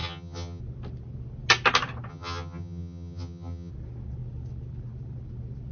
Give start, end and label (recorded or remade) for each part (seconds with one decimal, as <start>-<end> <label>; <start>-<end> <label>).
0.0-0.6 remade; 0.6-2.1 recorded; 2.1-3.7 remade; 3.7-5.7 recorded